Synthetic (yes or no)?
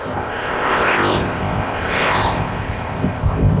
yes